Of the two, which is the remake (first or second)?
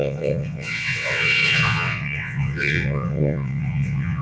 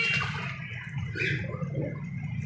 first